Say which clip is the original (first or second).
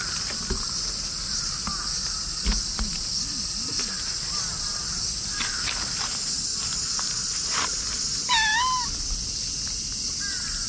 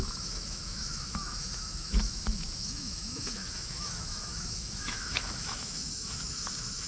first